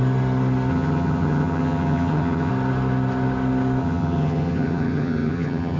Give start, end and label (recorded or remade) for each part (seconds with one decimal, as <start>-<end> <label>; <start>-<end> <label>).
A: 0.0-0.7 recorded; 0.7-2.5 remade; 2.5-3.8 recorded; 3.8-5.8 remade